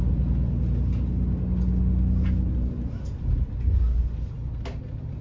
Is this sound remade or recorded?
recorded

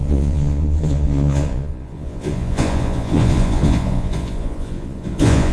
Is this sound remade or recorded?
remade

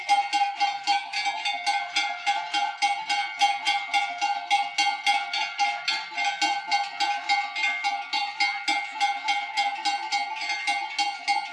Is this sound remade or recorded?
recorded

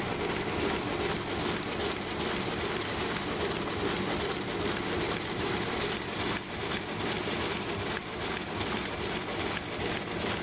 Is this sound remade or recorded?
recorded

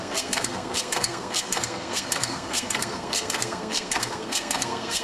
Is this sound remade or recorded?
remade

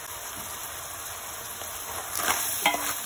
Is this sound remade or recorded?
recorded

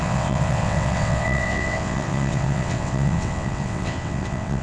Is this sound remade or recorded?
remade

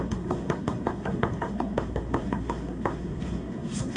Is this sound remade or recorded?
remade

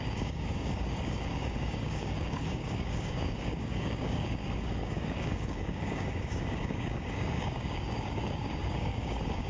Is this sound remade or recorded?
remade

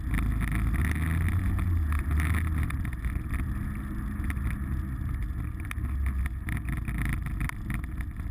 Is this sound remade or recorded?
recorded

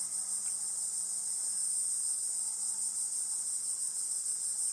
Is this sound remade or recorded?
recorded